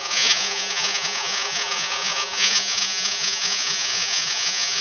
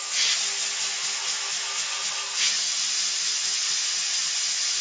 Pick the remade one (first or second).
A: first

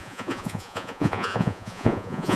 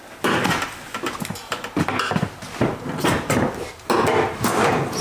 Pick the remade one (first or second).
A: first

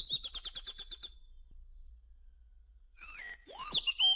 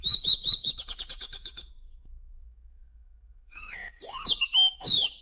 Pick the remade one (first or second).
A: second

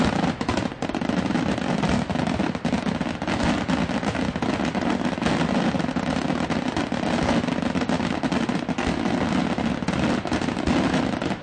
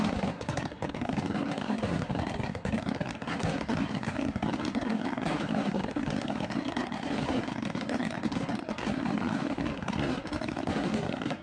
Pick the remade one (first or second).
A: second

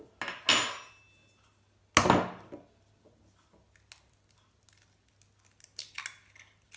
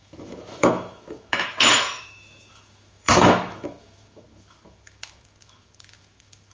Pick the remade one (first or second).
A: second